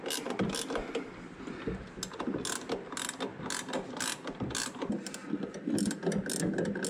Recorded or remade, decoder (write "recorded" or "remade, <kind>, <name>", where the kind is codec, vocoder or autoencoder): recorded